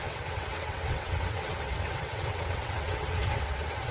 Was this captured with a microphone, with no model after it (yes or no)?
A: no